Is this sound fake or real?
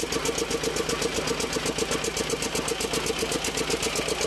real